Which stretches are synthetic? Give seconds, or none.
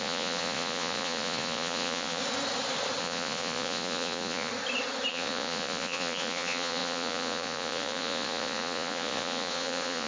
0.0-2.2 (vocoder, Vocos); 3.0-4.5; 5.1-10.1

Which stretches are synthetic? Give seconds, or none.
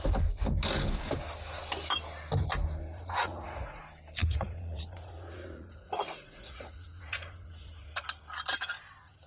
2.9-3.8 (vocoder, Vocos); 4.2-8.0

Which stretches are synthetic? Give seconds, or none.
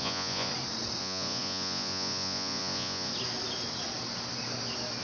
0.0-0.5 (vocoder, Vocos); 1.0-3.1